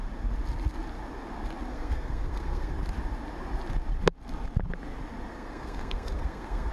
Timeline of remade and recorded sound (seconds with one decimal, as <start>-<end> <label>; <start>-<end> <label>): 0.0-1.7 recorded; 1.7-2.7 remade; 2.7-5.3 recorded; 5.3-6.7 remade